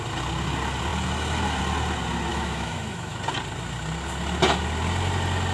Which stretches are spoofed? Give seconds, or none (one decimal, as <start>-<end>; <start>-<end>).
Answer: 2.3-3.2